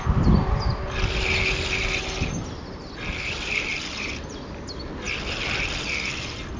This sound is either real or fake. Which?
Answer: real